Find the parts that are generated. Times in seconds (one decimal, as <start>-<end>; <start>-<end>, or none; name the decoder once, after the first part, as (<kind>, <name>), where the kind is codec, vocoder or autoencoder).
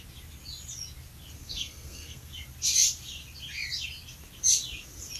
1.4-2.3 (codec, SNAC)